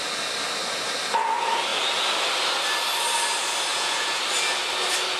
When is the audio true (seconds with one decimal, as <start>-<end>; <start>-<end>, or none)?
0.0-3.7; 4.2-5.2